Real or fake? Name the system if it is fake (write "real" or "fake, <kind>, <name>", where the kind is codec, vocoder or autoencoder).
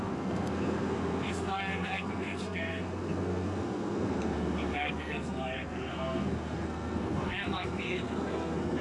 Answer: fake, codec, SNAC